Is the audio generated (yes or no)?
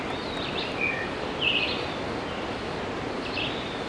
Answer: no